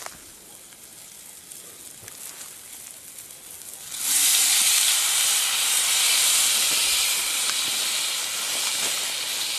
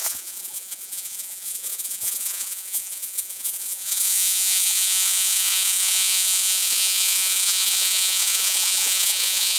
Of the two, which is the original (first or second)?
first